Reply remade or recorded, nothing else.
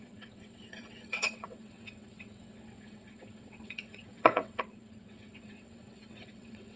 remade